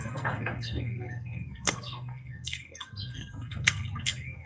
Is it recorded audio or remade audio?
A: remade